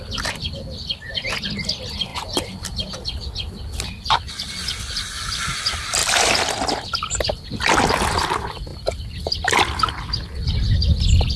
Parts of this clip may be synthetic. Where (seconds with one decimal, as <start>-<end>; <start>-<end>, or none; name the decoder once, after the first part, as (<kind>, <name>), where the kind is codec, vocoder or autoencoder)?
none